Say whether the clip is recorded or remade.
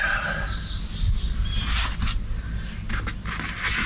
recorded